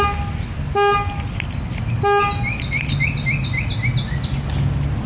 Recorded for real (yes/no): yes